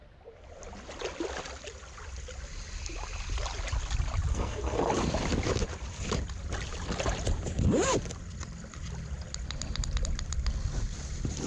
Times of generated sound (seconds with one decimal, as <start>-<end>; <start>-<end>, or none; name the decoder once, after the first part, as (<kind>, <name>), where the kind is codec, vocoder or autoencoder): 4.3-4.9 (codec, SNAC)